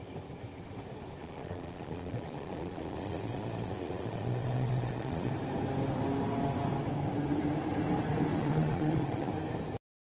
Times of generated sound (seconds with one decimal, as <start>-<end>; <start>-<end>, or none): 1.2-5.3; 8.3-9.3